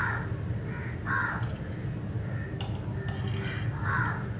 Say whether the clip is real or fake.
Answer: real